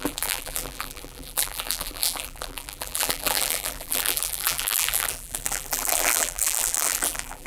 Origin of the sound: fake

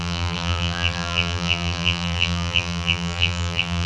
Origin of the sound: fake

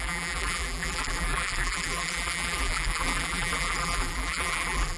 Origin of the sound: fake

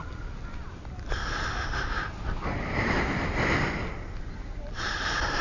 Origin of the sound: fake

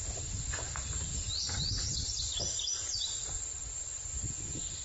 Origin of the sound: fake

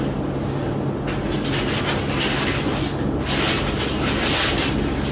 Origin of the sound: real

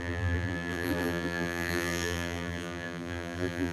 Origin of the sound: fake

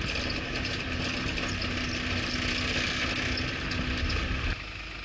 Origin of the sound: real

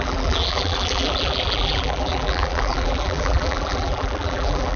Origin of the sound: fake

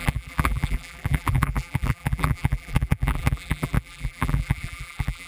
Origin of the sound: fake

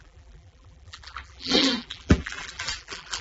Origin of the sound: fake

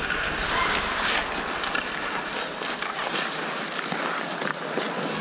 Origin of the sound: real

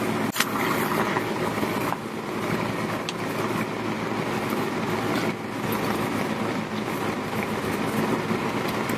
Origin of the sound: real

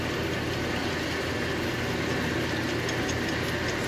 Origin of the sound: real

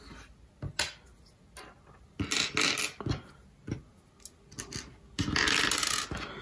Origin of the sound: real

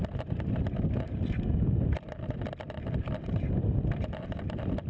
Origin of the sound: real